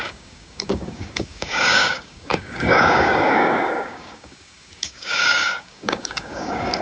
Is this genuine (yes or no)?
no